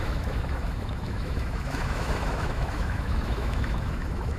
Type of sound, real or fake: fake